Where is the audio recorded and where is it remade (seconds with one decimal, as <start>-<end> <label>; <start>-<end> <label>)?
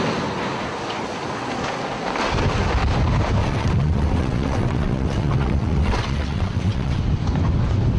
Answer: 0.0-3.4 recorded; 3.4-7.0 remade; 7.0-8.0 recorded